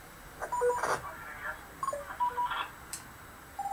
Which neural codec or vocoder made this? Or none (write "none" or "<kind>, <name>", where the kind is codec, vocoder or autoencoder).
none